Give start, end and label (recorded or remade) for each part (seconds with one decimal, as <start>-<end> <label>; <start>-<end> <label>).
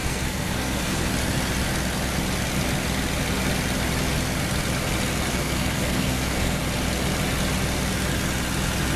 0.0-1.1 remade; 1.1-5.3 recorded; 5.3-6.6 remade; 6.6-9.0 recorded